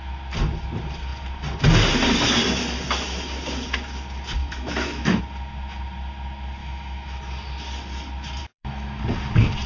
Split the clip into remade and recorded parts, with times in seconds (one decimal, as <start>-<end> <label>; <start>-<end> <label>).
0.0-4.4 recorded; 4.4-5.2 remade; 5.2-6.6 recorded; 6.6-7.2 remade; 7.2-8.4 recorded; 8.4-9.0 remade; 9.0-9.7 recorded